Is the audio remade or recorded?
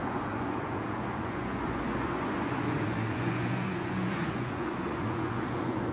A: remade